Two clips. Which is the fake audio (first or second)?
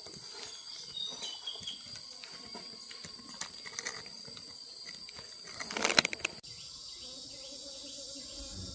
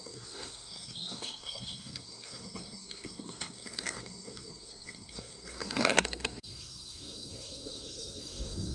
second